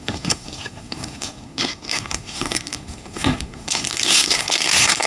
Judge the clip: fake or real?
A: fake